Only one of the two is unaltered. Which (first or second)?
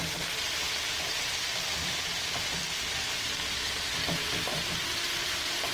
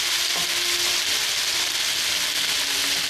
second